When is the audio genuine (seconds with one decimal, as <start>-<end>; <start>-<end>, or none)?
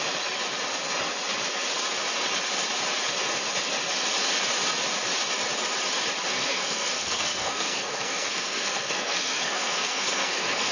0.0-6.3